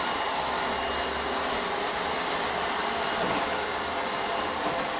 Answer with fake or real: real